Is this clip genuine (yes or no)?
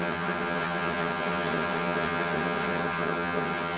no